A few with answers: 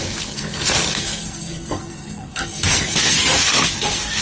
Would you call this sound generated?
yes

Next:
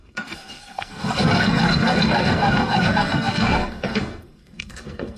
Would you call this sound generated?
yes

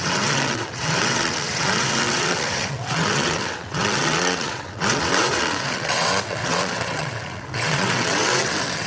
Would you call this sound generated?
yes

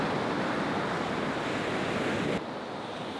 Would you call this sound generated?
no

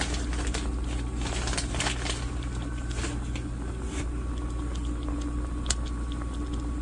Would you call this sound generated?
no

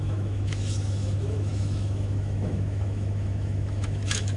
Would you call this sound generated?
yes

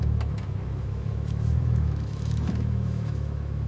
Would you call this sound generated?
yes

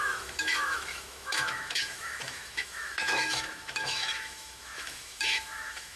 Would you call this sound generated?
yes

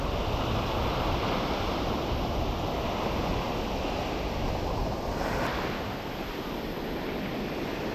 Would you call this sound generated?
no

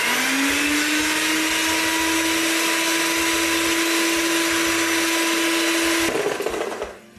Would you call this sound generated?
no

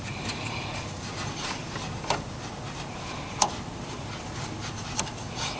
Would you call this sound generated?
yes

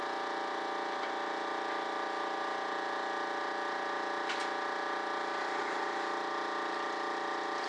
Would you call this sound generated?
no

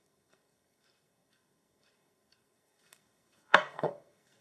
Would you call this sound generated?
yes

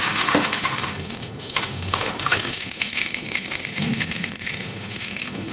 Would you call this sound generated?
yes